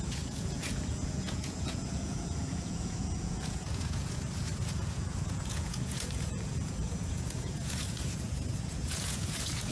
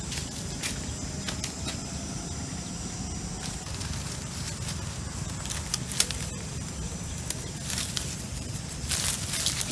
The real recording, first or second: second